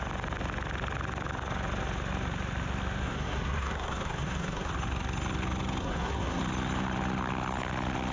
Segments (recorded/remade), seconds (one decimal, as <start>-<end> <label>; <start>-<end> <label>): 0.0-3.0 recorded; 3.0-4.7 remade; 4.7-5.8 recorded; 5.8-6.4 remade; 6.4-8.1 recorded